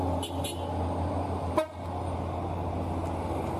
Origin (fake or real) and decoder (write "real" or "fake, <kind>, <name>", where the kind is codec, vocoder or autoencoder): real